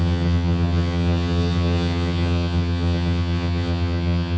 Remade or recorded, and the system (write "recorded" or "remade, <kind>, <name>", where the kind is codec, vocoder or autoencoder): remade, vocoder, HiFi-GAN